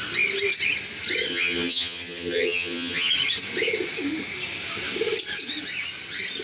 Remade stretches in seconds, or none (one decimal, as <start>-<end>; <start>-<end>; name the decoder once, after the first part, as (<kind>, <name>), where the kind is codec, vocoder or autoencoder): 1.3-3.1 (vocoder, HiFi-GAN)